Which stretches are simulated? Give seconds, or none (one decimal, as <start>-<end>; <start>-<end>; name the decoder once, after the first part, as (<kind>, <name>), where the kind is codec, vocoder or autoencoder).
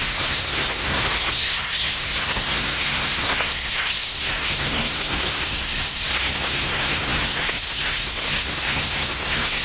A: 0.0-9.6 (codec, SNAC)